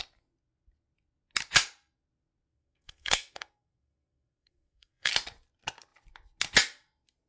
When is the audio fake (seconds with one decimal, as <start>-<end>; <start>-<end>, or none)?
2.5-5.1